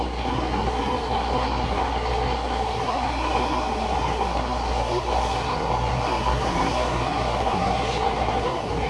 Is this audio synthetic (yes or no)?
yes